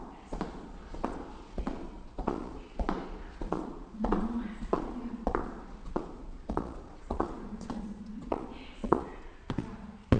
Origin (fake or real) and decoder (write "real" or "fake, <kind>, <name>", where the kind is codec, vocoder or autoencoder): fake, vocoder, Vocos